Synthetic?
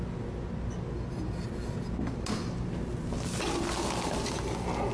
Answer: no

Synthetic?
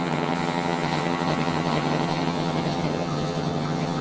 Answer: yes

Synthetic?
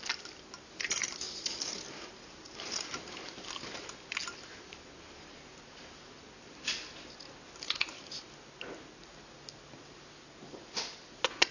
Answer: no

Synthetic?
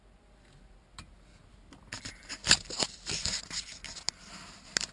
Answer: no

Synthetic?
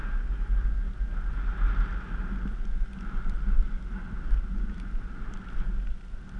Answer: no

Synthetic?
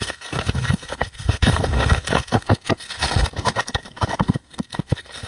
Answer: yes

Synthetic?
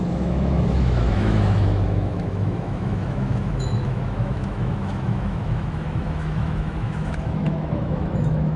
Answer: yes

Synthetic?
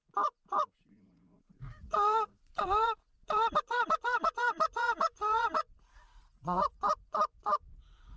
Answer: yes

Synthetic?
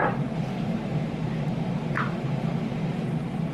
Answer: yes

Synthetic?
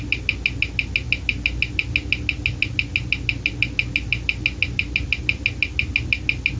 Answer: no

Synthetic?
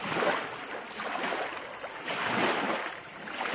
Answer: no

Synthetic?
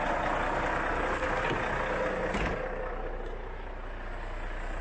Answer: no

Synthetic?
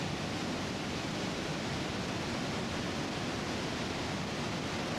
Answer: no